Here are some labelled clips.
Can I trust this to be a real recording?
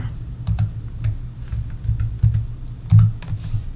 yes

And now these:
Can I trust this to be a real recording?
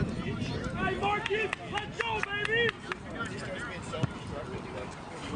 yes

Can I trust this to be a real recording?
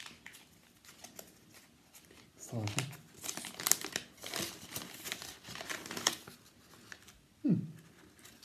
yes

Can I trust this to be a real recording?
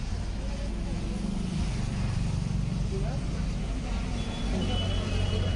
yes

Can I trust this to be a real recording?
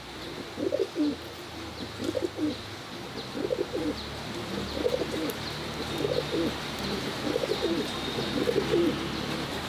yes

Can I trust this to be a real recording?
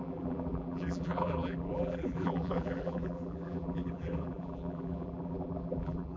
no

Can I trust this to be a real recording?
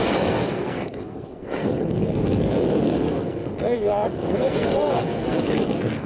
no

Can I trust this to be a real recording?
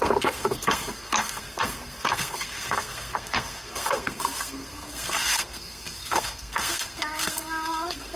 no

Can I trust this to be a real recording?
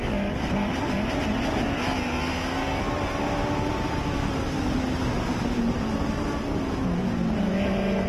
yes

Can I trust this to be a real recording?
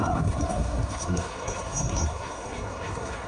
no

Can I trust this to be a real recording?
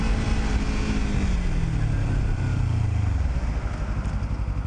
yes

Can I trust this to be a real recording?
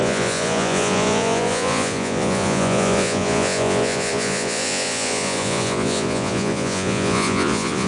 no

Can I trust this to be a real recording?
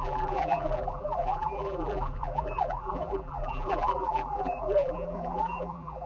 no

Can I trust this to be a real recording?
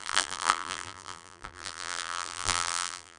no